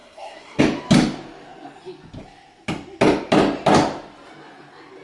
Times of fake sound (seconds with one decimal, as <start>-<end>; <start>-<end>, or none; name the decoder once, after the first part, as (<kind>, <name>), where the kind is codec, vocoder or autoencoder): 0.0-0.6 (codec, SNAC)